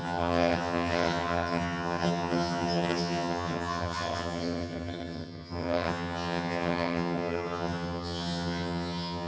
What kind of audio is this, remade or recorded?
remade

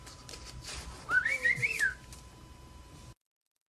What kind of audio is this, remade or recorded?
remade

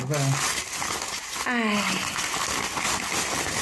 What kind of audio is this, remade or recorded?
recorded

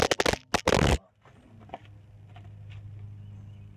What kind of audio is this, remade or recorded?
recorded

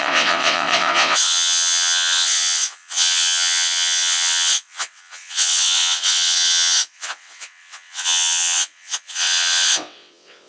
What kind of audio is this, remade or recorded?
remade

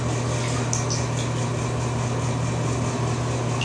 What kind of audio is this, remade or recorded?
recorded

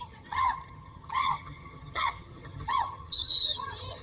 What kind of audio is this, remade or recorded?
remade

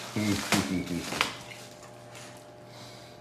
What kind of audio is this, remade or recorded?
recorded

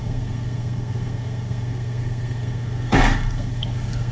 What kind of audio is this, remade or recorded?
remade